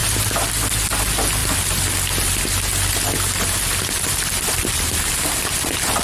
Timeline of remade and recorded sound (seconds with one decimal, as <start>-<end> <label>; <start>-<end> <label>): 0.0-0.5 remade; 0.5-1.4 recorded; 1.4-2.4 remade; 2.4-6.0 recorded